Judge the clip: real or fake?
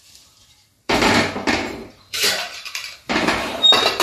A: fake